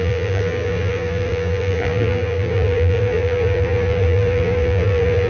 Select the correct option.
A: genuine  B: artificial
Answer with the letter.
B